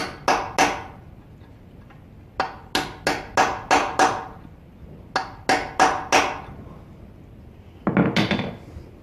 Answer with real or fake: real